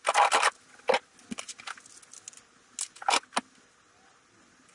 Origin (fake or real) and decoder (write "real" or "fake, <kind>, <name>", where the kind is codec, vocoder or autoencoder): real